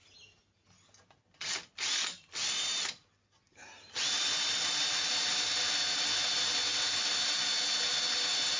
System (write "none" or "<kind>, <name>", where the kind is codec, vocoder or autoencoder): none